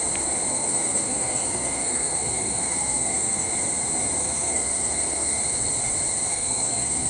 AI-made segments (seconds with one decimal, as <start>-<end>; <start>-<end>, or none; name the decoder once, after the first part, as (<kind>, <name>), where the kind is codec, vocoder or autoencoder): 0.5-3.5 (codec, SNAC); 4.2-5.4; 6.3-7.1